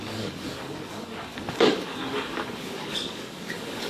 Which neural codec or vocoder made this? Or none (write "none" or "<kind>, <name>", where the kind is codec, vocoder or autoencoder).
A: codec, DAC